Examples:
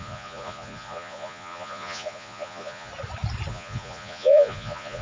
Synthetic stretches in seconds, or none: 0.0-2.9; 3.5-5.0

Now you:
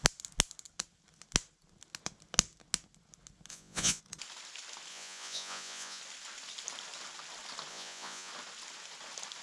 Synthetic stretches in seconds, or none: 3.5-4.0; 4.9-6.0; 7.7-8.3

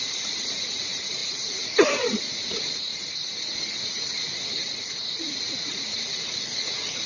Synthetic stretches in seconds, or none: 0.0-2.9; 3.8-7.1